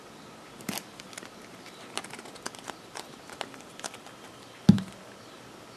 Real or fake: real